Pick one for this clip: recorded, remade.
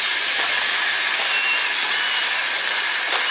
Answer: recorded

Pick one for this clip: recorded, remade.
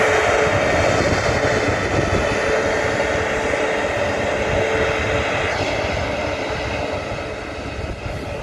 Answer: recorded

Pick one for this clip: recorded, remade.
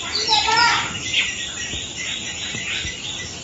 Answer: remade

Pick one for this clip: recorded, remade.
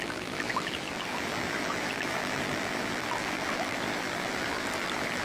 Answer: remade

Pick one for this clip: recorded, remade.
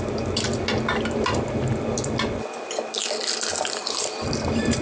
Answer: remade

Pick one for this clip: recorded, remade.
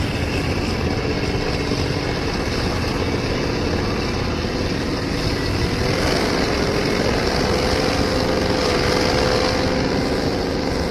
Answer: recorded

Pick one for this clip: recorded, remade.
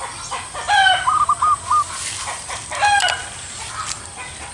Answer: recorded